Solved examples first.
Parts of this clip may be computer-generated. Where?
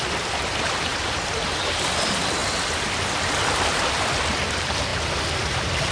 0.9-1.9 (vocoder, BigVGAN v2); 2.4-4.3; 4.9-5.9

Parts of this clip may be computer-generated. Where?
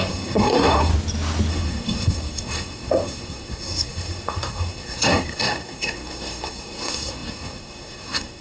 0.0-0.9 (codec, SNAC); 1.5-8.4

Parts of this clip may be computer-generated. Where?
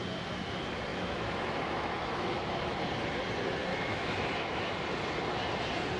0.9-2.4 (autoencoder, DAC-VAE); 3.7-4.7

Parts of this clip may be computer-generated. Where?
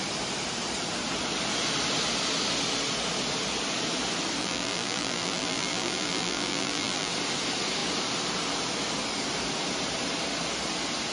4.4-7.1 (vocoder, BigVGAN v2)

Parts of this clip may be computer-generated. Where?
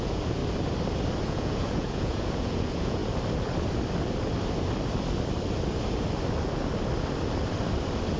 0.0-0.4 (vocoder, Vocos); 1.2-3.0